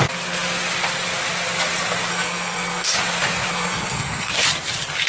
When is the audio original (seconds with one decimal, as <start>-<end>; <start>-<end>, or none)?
0.0-2.1; 2.9-3.5; 4.3-5.1